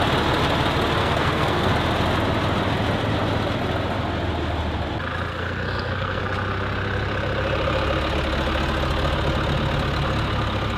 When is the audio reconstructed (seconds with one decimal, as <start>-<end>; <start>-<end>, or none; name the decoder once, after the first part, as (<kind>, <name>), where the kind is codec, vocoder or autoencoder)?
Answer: 1.0-1.7 (codec, SNAC); 5.3-6.2